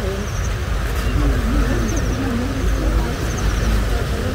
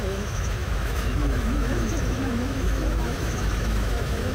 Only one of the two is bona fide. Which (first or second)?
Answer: first